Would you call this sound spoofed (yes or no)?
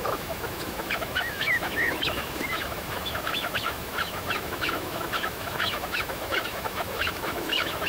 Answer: yes